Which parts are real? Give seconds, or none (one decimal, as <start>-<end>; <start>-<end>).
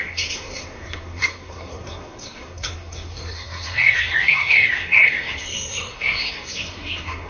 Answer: none